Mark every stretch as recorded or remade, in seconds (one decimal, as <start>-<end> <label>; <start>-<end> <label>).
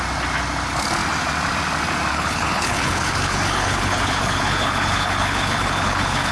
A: 0.0-2.1 recorded; 2.1-6.3 remade